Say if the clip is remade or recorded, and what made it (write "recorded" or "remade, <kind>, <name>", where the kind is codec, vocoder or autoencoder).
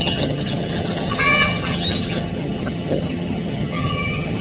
remade, vocoder, HiFi-GAN